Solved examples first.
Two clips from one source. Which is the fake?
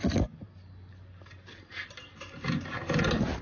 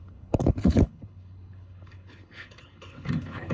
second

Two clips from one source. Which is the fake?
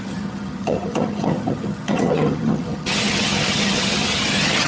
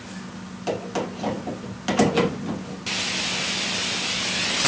first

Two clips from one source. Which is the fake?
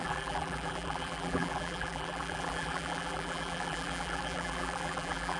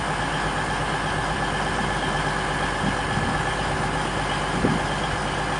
first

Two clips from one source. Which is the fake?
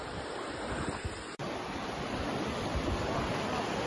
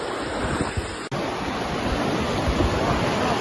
first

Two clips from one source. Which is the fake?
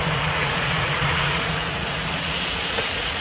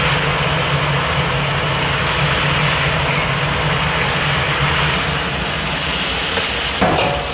first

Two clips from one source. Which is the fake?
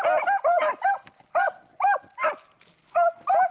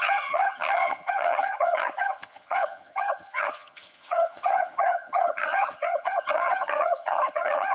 second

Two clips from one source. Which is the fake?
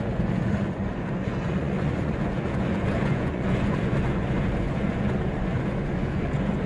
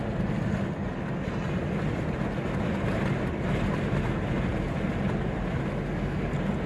first